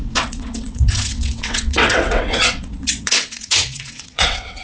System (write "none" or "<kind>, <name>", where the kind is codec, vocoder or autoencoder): vocoder, WaveNeXt